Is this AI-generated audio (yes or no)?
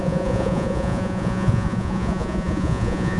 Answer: yes